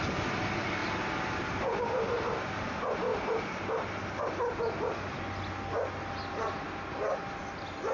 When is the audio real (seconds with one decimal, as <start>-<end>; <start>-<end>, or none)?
0.0-3.1; 5.2-7.9